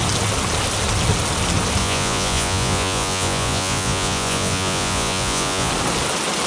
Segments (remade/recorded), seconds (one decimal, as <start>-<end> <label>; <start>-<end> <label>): 0.0-1.8 recorded; 1.8-5.7 remade; 5.7-6.5 recorded